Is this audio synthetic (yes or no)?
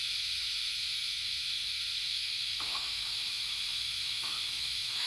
yes